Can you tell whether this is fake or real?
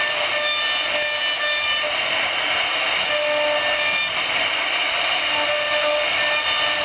real